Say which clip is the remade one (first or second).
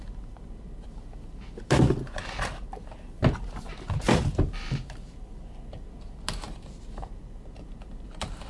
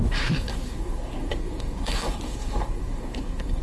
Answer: second